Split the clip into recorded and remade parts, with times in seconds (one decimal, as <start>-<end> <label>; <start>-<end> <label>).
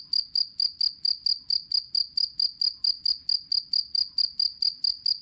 0.0-5.2 recorded